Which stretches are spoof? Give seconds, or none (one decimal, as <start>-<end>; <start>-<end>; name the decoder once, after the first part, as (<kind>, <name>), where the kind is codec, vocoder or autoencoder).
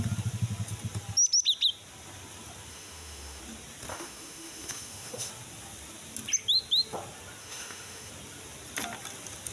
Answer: 2.7-3.4 (autoencoder, DAC-VAE); 3.9-5.3; 7.4-8.1